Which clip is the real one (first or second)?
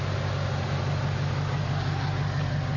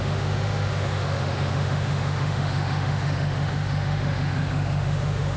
first